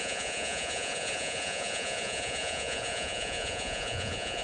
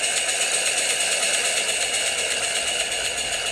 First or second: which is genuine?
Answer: second